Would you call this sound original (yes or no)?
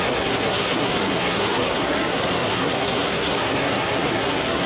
no